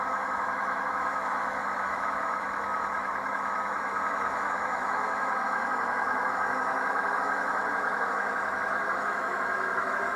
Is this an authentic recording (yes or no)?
no